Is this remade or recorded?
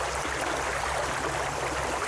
recorded